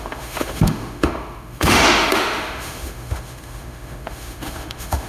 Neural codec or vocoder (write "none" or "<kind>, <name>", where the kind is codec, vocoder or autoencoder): autoencoder, DAC-VAE